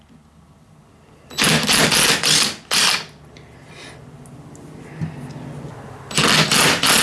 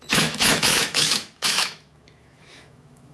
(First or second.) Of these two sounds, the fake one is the second